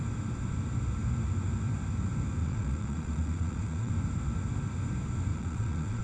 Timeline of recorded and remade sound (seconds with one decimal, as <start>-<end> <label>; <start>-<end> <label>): 0.0-2.4 recorded; 2.4-3.9 remade; 3.9-5.3 recorded; 5.3-6.0 remade